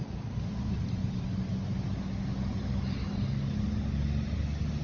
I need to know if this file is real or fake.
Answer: real